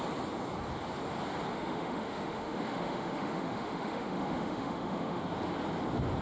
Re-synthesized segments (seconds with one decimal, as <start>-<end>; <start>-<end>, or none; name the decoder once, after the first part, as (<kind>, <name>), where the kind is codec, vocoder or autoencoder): 1.5-5.2 (autoencoder, DAC-VAE)